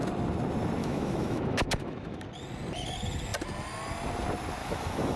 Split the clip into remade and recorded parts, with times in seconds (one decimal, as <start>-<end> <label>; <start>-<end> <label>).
0.0-0.8 recorded; 0.8-2.2 remade; 2.2-4.6 recorded; 4.6-5.2 remade